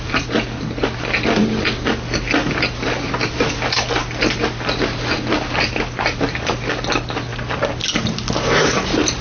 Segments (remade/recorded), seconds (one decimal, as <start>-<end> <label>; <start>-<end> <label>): 0.0-9.2 recorded